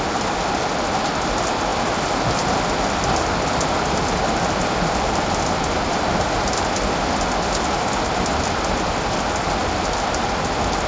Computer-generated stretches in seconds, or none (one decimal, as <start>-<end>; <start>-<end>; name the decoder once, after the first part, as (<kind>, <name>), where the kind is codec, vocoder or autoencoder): none